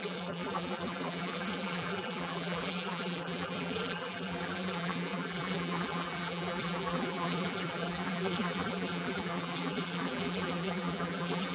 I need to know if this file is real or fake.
fake